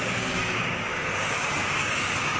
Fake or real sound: fake